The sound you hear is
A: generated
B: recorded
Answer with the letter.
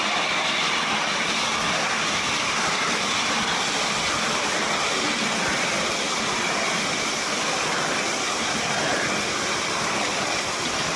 B